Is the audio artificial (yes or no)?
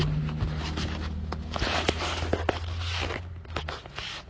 no